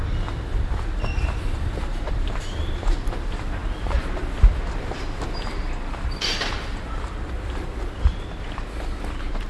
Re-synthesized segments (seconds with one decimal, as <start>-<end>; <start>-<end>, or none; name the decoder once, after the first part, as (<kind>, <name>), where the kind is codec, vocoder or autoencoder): 0.0-9.5 (vocoder, BigVGAN v2)